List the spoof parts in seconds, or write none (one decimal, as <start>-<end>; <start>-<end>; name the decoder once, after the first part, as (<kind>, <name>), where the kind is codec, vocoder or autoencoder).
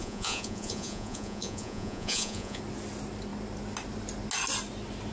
0.0-2.6 (vocoder, Vocos)